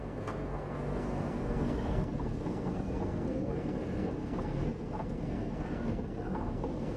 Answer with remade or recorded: remade